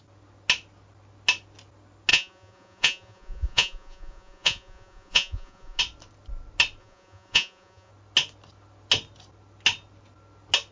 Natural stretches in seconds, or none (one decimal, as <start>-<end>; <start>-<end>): 0.0-2.1; 5.8-6.8; 7.9-10.7